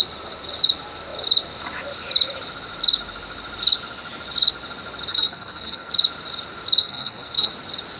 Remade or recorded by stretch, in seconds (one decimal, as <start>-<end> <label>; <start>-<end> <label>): 0.0-5.1 recorded; 5.1-5.9 remade; 5.9-6.8 recorded; 6.8-7.5 remade; 7.5-8.0 recorded